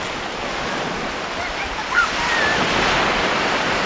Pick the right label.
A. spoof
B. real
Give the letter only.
B